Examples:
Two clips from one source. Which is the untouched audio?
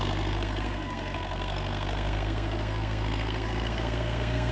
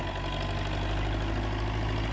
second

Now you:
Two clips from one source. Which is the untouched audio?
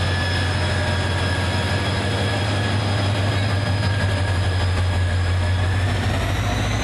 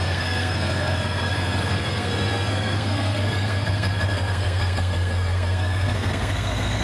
first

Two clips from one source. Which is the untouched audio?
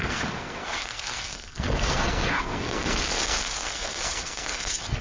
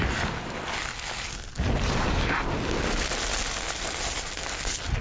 second